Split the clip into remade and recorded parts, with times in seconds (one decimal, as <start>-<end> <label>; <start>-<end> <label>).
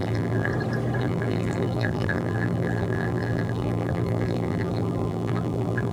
0.0-0.5 remade; 0.5-1.0 recorded; 1.0-5.9 remade